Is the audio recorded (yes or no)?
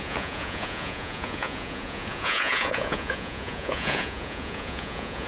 no